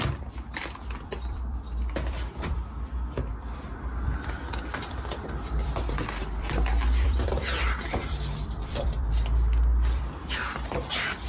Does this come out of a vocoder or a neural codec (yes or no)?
yes